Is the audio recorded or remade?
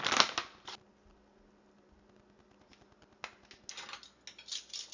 recorded